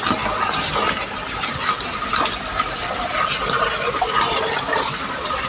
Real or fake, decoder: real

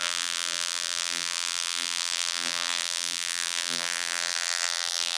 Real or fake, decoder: fake, vocoder, BigVGAN v2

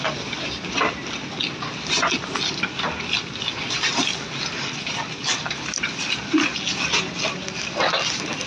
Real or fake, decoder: real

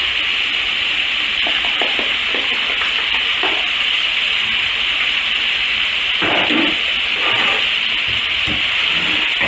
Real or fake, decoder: real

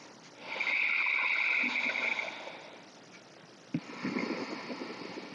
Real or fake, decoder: real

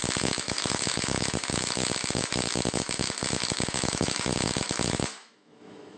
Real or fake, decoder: fake, autoencoder, DAC-VAE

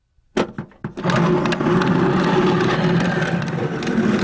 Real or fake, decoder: real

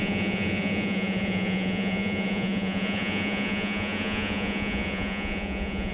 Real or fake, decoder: fake, vocoder, Vocos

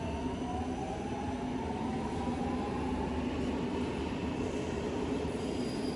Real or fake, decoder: real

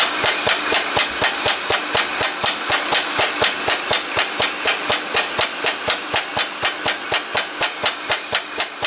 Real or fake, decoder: real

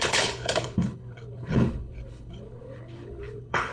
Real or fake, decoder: fake, codec, HILCodec